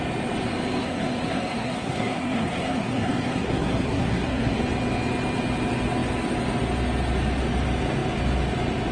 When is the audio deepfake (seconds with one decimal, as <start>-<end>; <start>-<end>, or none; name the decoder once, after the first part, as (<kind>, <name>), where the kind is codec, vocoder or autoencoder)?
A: 0.8-4.6 (codec, SNAC)